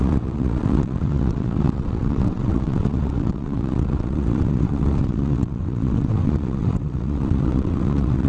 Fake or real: fake